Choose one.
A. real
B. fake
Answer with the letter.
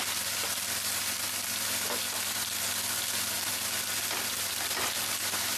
A